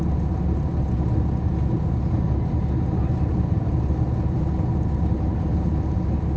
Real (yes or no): yes